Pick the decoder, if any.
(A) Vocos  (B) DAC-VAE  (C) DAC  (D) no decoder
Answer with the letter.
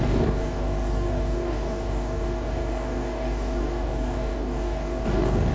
C